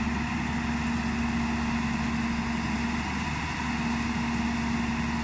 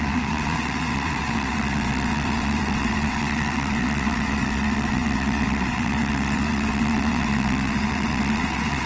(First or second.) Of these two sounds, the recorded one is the first